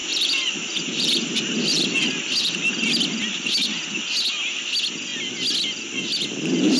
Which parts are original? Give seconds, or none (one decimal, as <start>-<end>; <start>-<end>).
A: 4.0-6.8